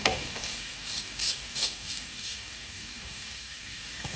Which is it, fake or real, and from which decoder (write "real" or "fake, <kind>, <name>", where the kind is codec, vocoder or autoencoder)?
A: fake, codec, DAC